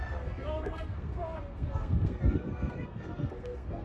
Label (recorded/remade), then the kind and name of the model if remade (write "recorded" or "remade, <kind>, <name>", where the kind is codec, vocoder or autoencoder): remade, codec, SNAC